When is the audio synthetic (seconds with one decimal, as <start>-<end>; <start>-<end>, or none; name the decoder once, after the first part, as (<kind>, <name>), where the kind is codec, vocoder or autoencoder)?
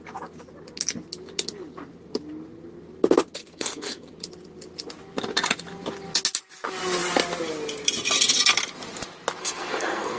3.4-4.1 (codec, SNAC); 9.4-10.2